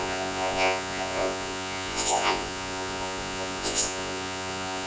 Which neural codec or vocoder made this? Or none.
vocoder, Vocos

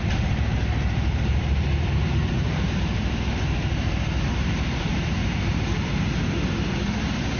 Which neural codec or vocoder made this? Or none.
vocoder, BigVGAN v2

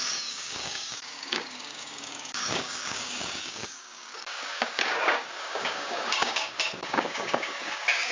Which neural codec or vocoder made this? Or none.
codec, DAC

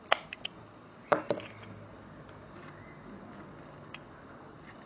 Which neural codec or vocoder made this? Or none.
none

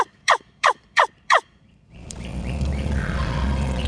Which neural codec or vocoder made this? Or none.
vocoder, Vocos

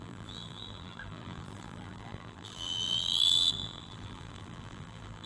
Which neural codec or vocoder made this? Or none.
vocoder, BigVGAN v2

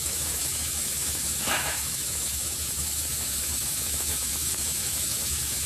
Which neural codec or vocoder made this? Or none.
autoencoder, DAC-VAE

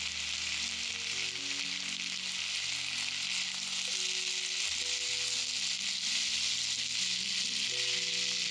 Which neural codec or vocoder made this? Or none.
none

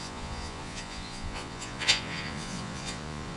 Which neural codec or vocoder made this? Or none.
vocoder, Vocos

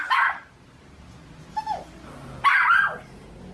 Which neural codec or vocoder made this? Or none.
none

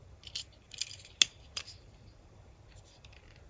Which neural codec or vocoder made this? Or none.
none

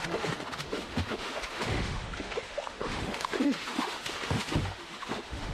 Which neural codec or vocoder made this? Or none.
autoencoder, DAC-VAE